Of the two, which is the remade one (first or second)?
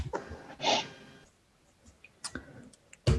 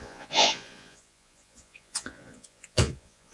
second